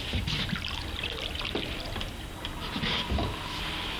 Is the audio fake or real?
real